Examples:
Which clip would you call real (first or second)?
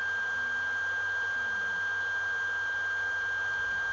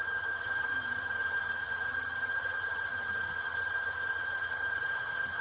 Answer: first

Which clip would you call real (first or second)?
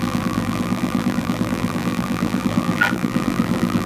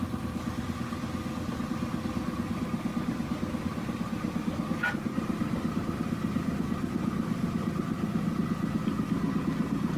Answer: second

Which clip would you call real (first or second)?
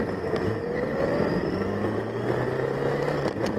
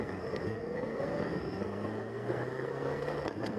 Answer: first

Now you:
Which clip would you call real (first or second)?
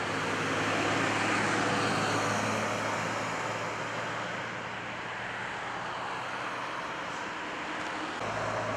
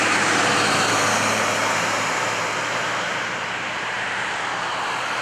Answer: first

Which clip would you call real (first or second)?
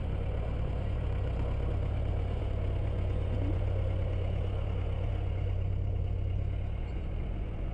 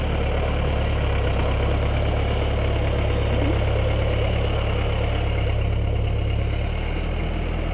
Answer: second